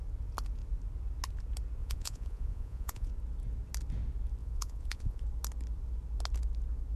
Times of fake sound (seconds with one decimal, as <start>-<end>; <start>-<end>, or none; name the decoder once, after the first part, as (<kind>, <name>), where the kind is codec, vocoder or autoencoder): 1.8-3.1 (vocoder, Vocos); 4.4-5.2